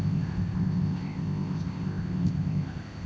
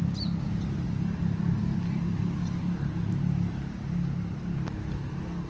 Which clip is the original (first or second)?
second